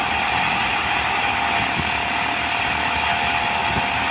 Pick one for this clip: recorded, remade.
recorded